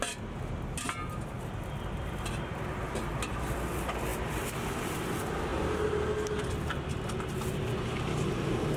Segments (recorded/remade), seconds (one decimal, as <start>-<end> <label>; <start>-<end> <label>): 0.0-8.8 recorded